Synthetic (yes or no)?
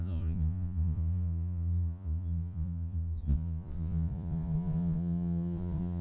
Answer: yes